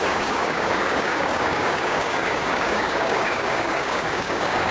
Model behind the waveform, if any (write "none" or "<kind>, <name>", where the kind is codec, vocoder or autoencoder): codec, DAC